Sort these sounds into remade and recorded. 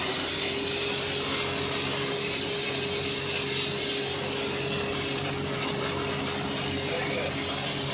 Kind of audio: recorded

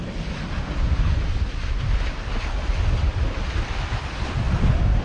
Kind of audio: recorded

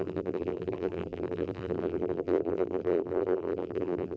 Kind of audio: remade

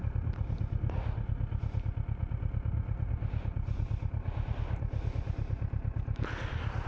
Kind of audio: recorded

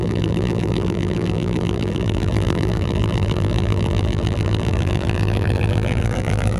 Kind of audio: remade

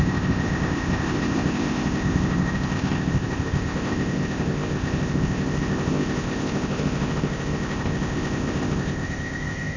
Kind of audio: remade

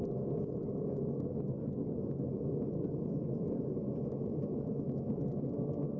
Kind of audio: recorded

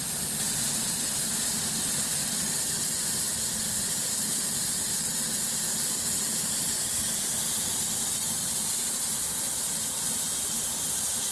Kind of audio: recorded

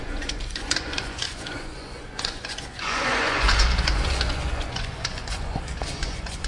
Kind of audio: remade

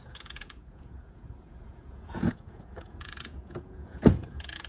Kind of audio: remade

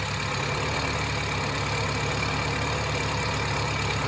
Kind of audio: recorded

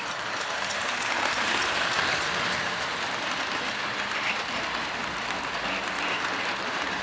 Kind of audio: remade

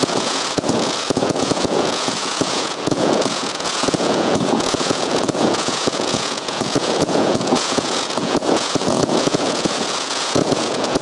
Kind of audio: remade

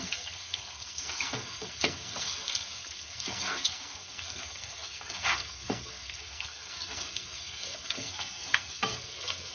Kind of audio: remade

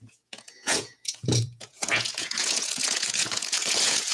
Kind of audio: remade